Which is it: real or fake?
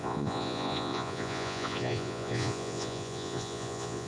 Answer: fake